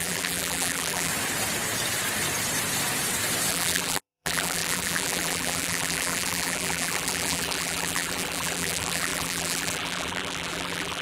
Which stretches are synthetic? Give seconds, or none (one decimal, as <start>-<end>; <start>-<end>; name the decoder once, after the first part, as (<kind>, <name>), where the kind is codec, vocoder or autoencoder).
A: 0.0-1.1 (vocoder, BigVGAN v2); 3.5-11.0